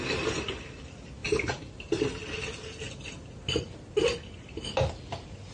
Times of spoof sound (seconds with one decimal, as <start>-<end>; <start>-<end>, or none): none